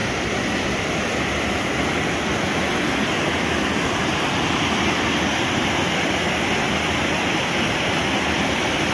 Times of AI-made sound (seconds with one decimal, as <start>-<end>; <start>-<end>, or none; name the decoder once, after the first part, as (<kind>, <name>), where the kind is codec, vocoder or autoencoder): none